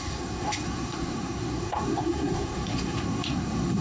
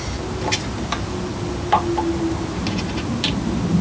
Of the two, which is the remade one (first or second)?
first